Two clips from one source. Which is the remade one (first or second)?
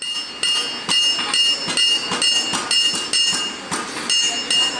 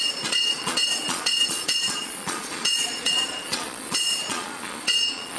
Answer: second